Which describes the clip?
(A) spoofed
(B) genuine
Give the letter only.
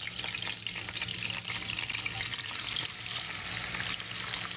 B